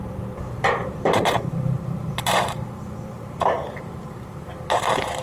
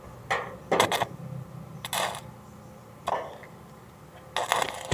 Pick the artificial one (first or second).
first